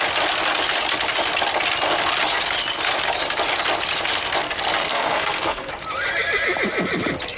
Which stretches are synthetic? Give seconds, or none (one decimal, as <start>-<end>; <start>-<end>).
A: 4.8-5.7